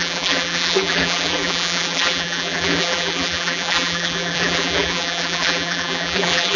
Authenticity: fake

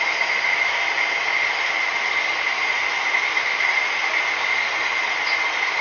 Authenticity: real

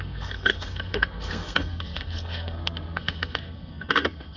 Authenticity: fake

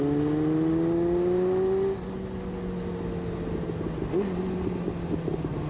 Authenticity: real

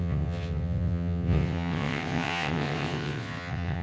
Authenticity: fake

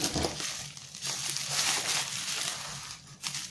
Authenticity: real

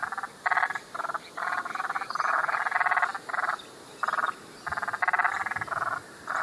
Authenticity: real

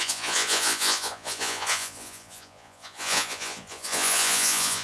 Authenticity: fake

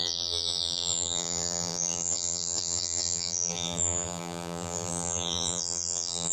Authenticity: fake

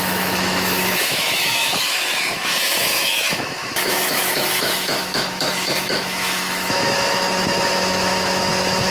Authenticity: fake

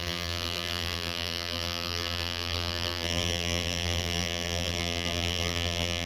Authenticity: fake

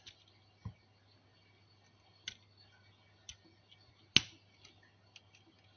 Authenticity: real